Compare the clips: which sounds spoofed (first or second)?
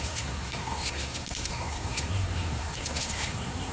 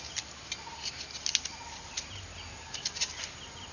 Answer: first